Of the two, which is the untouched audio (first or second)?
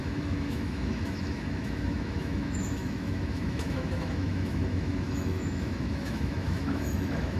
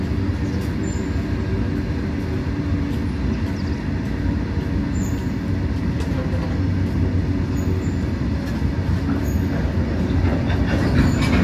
second